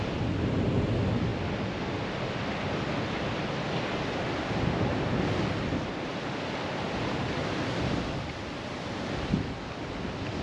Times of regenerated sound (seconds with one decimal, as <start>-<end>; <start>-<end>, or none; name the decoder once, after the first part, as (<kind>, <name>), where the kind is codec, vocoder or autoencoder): none